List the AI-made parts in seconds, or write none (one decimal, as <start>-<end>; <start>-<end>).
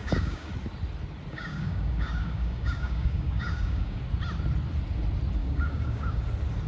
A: 0.0-0.5; 1.3-4.0; 5.4-6.2